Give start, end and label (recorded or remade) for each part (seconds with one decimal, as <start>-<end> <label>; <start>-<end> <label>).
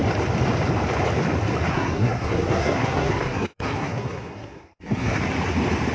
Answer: 0.0-1.7 recorded; 1.7-5.2 remade; 5.2-5.9 recorded